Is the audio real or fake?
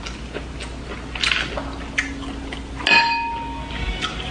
real